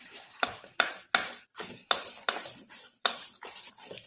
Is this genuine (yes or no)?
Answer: no